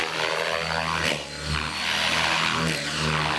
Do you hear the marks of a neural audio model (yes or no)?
no